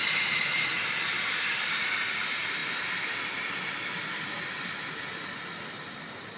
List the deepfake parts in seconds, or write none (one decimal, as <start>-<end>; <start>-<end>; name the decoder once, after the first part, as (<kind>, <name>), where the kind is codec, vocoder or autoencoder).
0.0-0.6 (vocoder, BigVGAN v2)